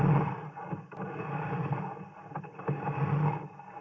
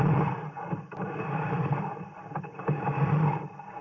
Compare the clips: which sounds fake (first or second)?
second